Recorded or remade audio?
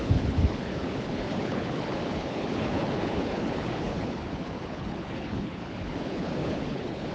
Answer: remade